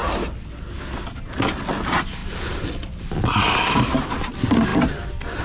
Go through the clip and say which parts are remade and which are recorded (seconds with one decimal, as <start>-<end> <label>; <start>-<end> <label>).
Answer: 0.0-2.2 recorded; 2.2-3.1 remade; 3.1-4.7 recorded; 4.7-5.4 remade